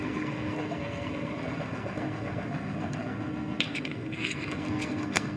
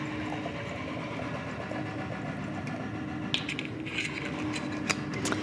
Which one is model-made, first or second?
first